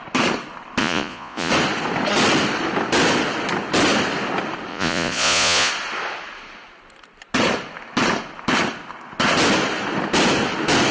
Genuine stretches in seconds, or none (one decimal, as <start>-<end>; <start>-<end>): 0.0-0.8; 1.5-4.7; 5.7-10.9